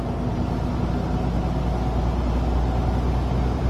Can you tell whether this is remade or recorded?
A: recorded